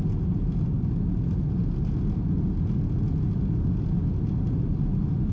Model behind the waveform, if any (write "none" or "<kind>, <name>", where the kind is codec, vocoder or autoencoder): none